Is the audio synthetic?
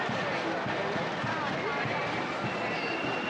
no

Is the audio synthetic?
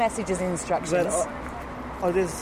no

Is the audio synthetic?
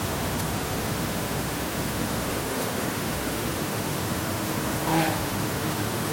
yes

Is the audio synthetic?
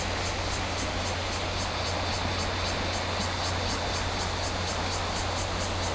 no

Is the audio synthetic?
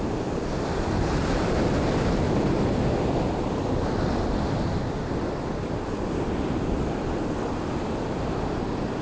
no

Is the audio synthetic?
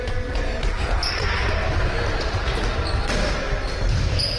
no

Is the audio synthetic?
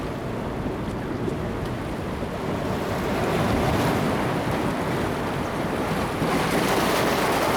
no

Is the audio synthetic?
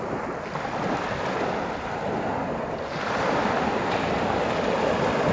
no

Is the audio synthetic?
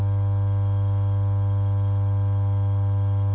no